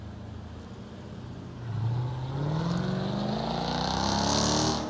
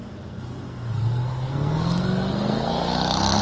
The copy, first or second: second